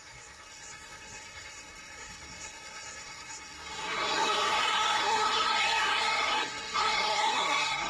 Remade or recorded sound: remade